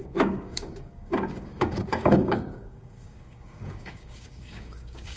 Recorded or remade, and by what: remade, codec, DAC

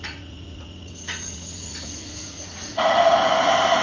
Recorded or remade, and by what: remade, vocoder, Vocos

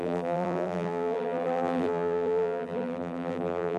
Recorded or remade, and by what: remade, vocoder, BigVGAN v2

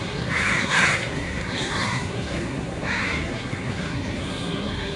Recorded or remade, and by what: remade, codec, SNAC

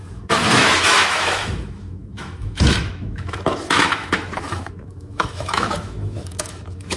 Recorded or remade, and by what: remade, autoencoder, DAC-VAE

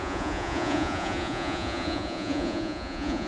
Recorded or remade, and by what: remade, vocoder, Vocos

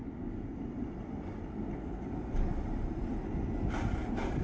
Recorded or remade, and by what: recorded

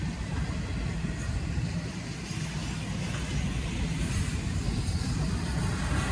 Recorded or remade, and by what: recorded